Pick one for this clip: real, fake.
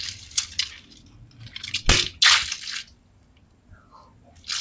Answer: real